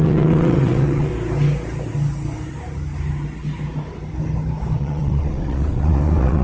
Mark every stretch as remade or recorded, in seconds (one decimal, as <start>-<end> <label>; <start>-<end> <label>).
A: 0.0-1.1 remade; 1.1-4.8 recorded; 4.8-6.4 remade